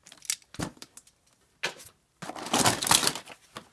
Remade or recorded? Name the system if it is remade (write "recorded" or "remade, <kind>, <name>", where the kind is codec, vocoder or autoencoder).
recorded